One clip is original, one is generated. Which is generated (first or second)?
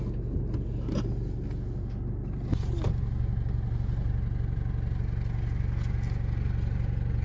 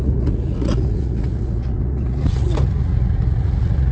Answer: second